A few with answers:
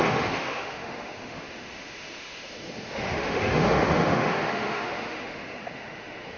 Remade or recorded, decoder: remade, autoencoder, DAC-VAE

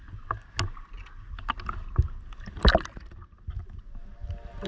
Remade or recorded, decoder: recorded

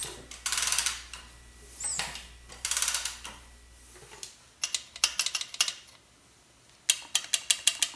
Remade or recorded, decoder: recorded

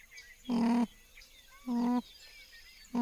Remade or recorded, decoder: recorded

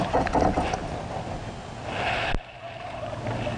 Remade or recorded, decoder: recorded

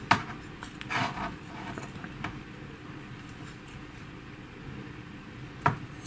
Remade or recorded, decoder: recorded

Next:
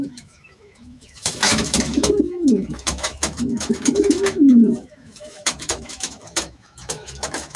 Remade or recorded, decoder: remade, autoencoder, DAC-VAE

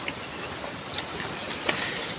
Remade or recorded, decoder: recorded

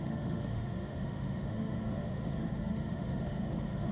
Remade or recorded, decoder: remade, autoencoder, DAC-VAE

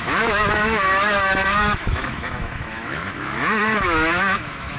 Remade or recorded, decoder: remade, autoencoder, DAC-VAE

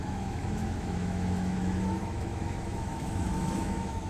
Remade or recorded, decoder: remade, autoencoder, DAC-VAE